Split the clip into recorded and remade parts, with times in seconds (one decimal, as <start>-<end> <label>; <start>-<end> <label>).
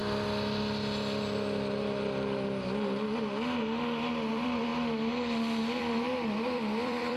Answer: 0.0-4.3 recorded; 4.3-4.7 remade; 4.7-5.8 recorded; 5.8-7.2 remade